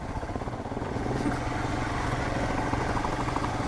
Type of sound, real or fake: fake